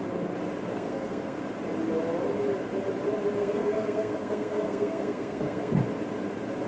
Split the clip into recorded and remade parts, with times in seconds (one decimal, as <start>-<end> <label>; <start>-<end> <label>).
0.0-0.7 recorded; 0.7-1.4 remade; 1.4-3.4 recorded; 3.4-5.7 remade; 5.7-6.7 recorded